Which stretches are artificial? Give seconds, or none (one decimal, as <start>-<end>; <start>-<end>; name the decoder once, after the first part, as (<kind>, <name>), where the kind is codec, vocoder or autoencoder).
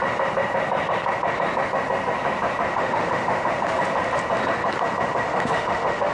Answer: 2.7-3.8 (autoencoder, DAC-VAE); 5.3-6.1